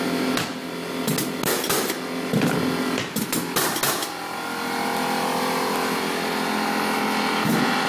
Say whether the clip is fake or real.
real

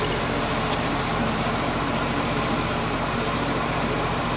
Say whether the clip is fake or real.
fake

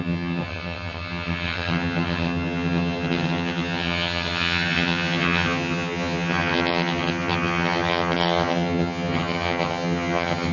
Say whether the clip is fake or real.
fake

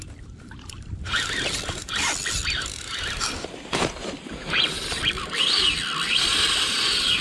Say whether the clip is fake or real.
fake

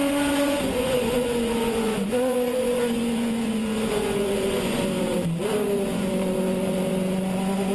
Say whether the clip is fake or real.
fake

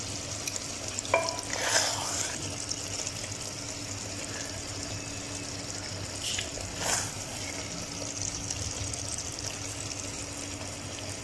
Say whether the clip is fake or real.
real